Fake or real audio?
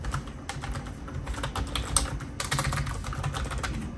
real